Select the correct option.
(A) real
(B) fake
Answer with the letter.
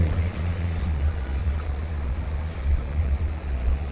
B